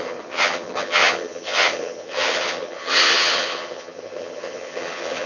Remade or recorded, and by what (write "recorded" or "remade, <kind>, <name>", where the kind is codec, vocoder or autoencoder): remade, vocoder, HiFi-GAN